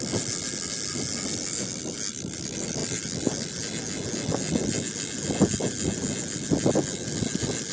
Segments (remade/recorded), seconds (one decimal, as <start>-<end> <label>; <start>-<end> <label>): 0.0-7.7 recorded